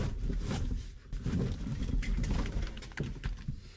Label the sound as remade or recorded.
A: recorded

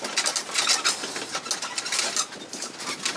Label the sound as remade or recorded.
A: recorded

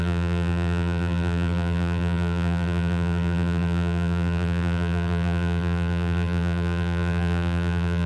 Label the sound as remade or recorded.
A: remade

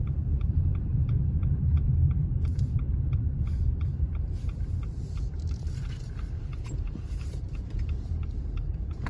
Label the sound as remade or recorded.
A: remade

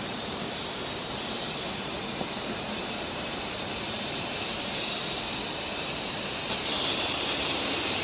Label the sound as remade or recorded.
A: remade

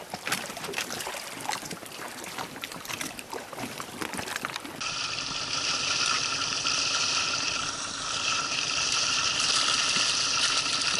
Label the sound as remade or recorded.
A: remade